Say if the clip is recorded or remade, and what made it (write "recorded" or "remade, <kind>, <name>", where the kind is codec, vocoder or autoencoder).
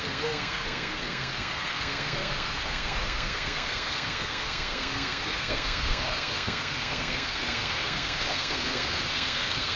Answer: remade, codec, SNAC